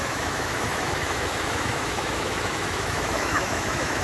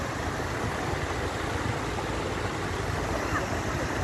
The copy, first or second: first